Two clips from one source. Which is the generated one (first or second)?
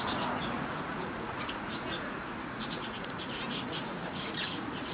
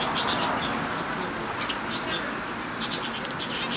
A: first